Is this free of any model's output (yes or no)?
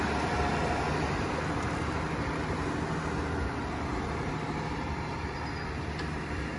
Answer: yes